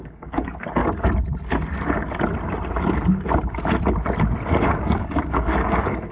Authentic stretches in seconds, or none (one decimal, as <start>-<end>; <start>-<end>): 0.8-4.5